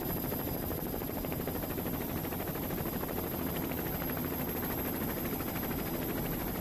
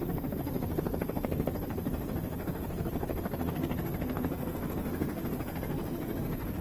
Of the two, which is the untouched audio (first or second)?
first